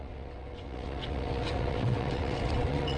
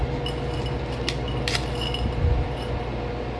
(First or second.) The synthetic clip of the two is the first